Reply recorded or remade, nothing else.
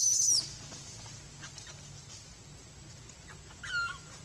recorded